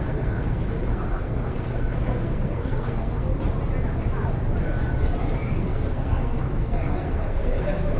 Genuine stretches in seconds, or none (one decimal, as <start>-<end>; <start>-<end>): 3.3-5.5